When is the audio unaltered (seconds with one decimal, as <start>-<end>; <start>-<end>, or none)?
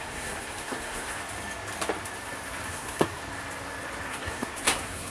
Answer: 1.2-2.7; 3.2-4.1